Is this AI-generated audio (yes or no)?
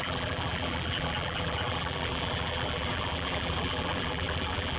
yes